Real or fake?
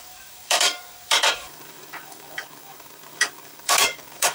fake